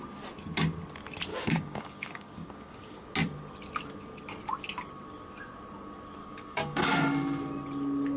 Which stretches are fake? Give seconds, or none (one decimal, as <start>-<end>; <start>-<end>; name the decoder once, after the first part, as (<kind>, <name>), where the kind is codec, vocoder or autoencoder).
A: 1.3-3.1 (codec, DAC); 6.2-7.0